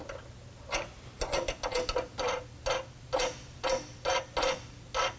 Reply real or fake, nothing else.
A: real